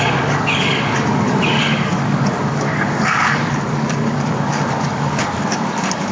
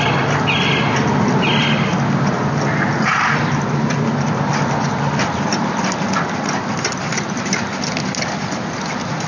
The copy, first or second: first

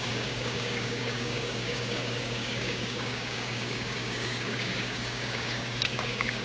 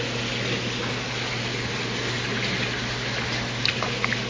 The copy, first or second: first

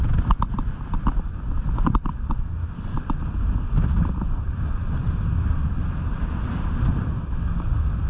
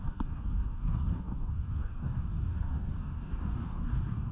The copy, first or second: second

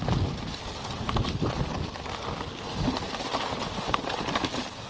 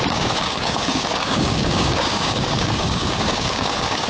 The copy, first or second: second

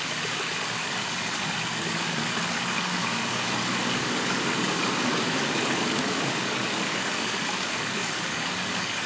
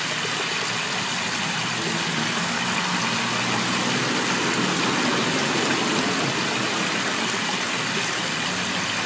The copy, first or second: first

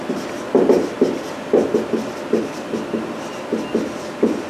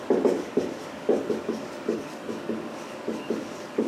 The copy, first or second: second